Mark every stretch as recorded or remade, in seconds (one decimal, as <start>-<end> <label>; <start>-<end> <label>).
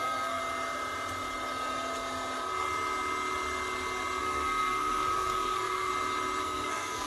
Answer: 0.0-0.4 remade; 0.4-4.2 recorded; 4.2-5.9 remade; 5.9-6.4 recorded; 6.4-7.1 remade